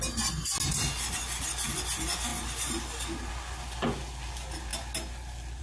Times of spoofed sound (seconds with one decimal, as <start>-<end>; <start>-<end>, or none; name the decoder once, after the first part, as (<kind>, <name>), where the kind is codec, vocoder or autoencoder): none